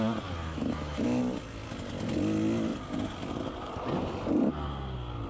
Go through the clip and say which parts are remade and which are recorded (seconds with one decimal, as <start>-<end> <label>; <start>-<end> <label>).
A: 0.0-0.4 recorded; 0.4-1.2 remade; 1.2-5.3 recorded